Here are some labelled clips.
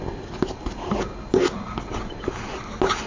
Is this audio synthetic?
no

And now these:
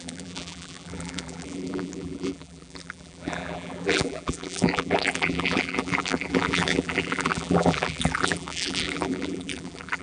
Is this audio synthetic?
yes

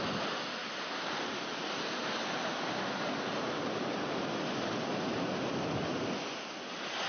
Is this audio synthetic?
no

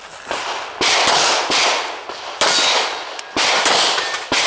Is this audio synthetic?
no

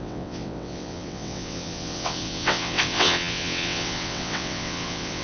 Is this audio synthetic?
yes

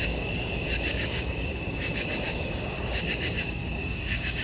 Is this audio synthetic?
yes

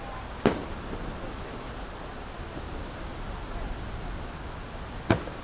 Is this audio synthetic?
no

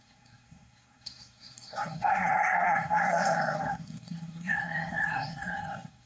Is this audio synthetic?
yes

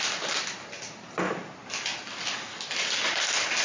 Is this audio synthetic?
no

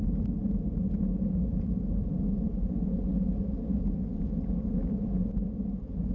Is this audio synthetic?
no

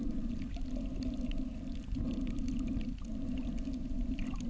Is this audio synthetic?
no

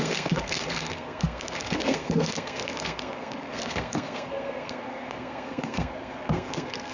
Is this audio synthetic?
yes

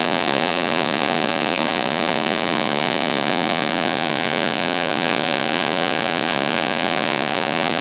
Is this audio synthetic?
yes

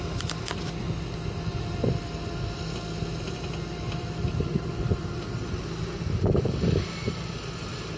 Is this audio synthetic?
no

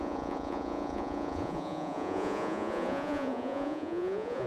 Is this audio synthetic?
yes